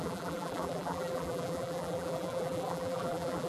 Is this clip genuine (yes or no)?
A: no